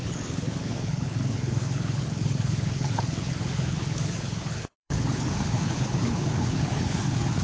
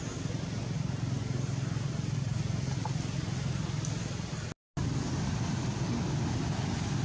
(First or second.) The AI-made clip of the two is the first